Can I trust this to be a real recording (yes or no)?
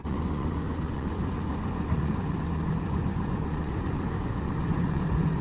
no